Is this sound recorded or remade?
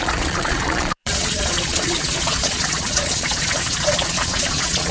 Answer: remade